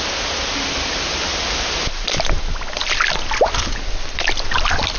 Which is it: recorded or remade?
recorded